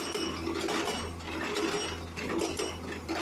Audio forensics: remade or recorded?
recorded